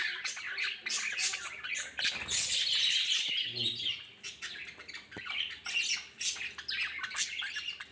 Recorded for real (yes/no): yes